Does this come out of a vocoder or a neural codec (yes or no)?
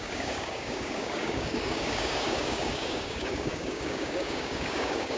yes